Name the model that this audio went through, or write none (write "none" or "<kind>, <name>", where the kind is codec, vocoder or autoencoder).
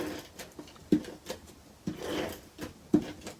none